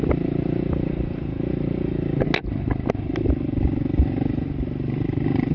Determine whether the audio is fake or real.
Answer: real